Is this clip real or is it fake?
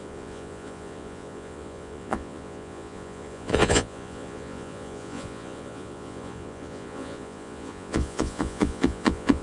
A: fake